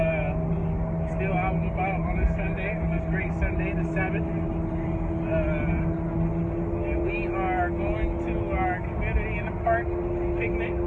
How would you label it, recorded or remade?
recorded